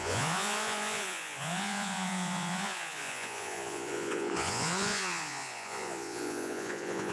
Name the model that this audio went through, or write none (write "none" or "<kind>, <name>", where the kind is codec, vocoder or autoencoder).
vocoder, Vocos